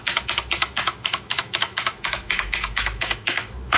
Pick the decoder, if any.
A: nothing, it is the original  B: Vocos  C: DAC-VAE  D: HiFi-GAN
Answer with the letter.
C